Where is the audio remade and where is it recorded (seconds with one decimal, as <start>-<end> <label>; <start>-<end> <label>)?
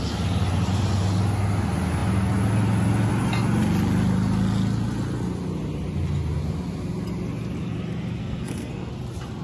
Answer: 0.0-8.2 recorded; 8.2-8.9 remade; 8.9-9.4 recorded